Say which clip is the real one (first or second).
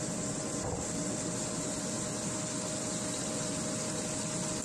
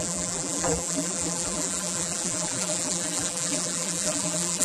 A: first